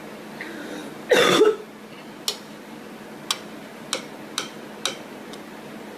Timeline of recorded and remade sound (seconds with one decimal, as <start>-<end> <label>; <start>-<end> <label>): 0.0-6.0 recorded